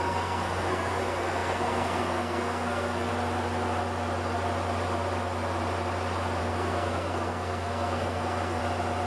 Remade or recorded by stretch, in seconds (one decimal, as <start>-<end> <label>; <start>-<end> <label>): 0.0-3.1 remade; 3.1-6.4 recorded; 6.4-8.6 remade; 8.6-9.1 recorded